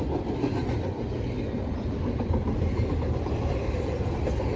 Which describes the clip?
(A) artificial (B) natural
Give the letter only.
B